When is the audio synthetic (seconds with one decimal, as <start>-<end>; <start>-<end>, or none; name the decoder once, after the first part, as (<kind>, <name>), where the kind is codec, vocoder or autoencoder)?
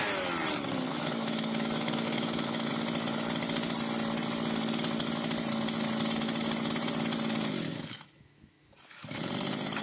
0.9-2.7 (autoencoder, DAC-VAE); 7.7-9.2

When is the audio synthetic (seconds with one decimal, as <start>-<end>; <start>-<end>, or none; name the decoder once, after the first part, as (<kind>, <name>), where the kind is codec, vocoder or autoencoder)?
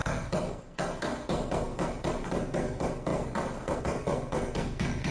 0.0-5.1 (codec, SNAC)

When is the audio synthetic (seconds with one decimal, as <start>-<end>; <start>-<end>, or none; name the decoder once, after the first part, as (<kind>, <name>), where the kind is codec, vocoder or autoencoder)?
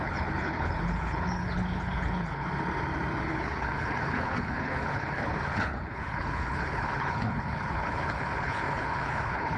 0.0-2.5 (codec, HILCodec); 3.3-9.6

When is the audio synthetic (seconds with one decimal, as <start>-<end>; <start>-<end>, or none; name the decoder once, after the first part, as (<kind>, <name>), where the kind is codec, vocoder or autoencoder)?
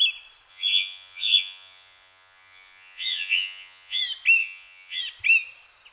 0.5-4.0 (vocoder, Vocos); 4.4-5.0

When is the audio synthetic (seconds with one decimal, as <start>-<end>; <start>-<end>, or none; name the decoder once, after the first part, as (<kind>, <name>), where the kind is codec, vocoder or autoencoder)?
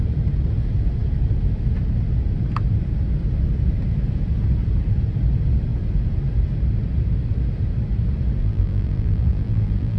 8.4-10.0 (vocoder, BigVGAN v2)